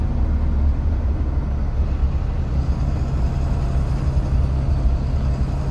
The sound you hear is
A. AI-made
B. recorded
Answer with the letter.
B